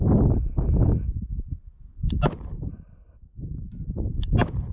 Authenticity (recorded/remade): recorded